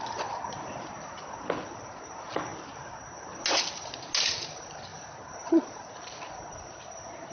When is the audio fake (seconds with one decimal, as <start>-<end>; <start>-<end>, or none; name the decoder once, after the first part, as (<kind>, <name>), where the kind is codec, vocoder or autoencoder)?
4.9-6.2 (vocoder, BigVGAN v2)